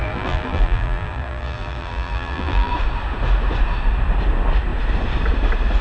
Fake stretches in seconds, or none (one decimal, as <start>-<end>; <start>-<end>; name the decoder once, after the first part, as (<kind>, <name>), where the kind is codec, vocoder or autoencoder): 0.0-2.7 (vocoder, BigVGAN v2)

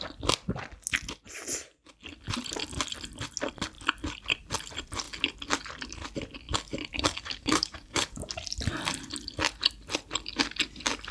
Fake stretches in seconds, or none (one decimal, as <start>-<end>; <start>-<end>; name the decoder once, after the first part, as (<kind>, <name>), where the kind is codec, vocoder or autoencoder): 6.9-8.3 (codec, DAC)

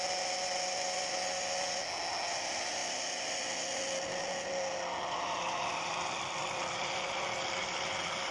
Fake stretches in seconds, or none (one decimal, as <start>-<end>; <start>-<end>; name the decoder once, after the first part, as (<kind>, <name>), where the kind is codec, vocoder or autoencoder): none

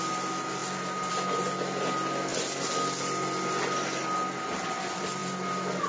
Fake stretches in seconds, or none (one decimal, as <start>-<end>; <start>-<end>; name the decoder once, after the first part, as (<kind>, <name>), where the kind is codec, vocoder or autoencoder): none

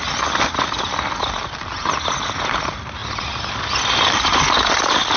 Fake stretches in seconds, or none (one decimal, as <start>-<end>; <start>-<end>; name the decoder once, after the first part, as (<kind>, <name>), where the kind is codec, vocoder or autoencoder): none

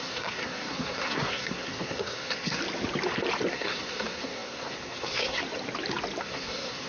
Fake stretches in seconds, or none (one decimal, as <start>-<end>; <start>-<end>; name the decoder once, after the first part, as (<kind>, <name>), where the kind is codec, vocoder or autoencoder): 0.0-2.6 (codec, SNAC); 3.5-5.4; 6.2-6.9

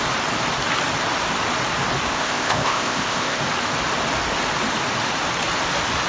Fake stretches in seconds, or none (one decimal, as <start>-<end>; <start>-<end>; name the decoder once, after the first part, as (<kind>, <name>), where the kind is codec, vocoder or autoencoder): 2.1-3.4 (codec, ZipCodec)

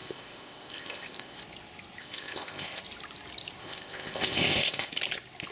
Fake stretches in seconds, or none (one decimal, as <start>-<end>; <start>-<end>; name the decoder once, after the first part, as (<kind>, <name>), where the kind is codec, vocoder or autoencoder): 0.0-1.4 (codec, ZipCodec); 2.0-2.8; 3.6-4.9